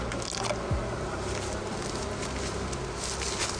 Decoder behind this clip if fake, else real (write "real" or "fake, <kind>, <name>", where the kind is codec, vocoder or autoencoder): real